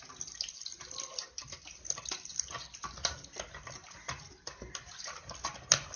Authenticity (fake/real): real